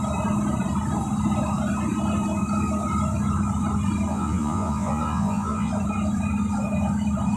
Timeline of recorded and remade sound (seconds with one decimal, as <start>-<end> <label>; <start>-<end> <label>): 0.0-4.1 recorded; 4.1-5.7 remade; 5.7-7.4 recorded